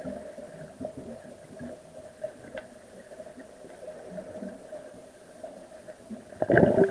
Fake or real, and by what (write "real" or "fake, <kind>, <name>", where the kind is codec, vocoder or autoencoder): real